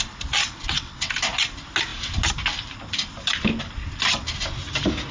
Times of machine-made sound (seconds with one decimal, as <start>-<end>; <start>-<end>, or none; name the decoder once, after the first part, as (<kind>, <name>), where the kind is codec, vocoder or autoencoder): 0.4-1.1 (vocoder, WaveNeXt)